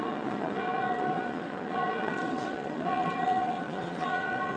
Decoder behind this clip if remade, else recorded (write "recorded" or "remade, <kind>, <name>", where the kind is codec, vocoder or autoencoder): remade, vocoder, Vocos